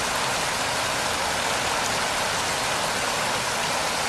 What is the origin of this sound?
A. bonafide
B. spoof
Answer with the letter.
A